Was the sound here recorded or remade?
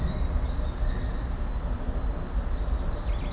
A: recorded